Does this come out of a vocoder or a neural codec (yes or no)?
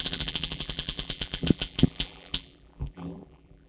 yes